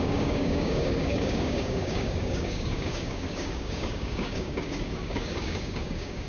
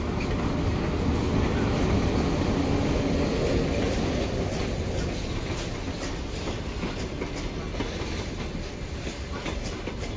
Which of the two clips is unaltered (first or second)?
second